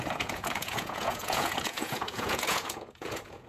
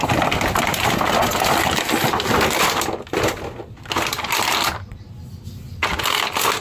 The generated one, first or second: first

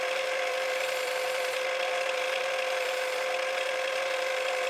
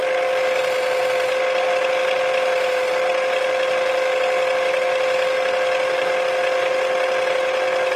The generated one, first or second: first